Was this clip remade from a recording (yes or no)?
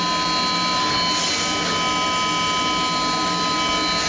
no